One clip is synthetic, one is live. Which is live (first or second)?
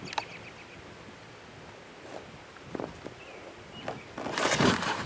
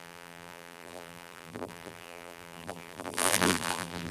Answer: first